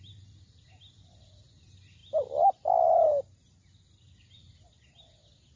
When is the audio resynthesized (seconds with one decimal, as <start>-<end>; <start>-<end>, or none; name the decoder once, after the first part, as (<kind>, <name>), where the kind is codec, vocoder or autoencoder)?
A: none

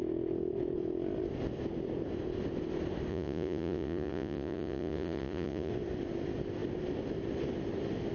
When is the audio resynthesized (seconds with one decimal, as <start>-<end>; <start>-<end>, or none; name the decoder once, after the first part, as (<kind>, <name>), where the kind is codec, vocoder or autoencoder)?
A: 3.1-5.7 (vocoder, Vocos)

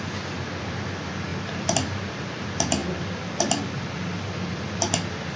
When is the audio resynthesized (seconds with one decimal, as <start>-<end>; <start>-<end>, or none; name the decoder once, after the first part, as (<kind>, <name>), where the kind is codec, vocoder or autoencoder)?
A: none

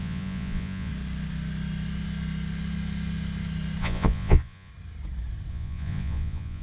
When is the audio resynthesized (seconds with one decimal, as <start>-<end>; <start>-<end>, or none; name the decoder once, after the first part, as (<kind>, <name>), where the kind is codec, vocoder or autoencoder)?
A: 0.0-0.9 (vocoder, Vocos); 3.8-4.7; 5.5-6.6

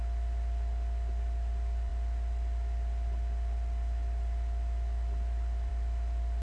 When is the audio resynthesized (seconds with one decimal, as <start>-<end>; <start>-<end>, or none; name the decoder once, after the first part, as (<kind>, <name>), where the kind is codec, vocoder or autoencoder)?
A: none

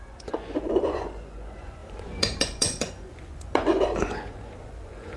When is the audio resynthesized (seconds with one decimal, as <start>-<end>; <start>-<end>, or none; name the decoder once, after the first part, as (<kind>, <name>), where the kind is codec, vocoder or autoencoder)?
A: 0.0-5.2 (vocoder, Vocos)

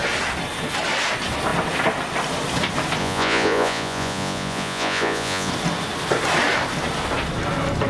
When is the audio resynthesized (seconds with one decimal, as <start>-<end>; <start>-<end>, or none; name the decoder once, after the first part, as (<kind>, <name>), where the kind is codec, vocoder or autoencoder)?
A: 3.0-5.5 (vocoder, Vocos)

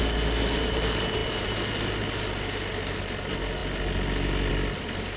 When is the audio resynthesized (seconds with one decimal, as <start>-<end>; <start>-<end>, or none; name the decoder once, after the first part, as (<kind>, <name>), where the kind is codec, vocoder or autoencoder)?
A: none